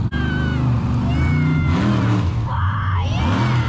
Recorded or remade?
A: recorded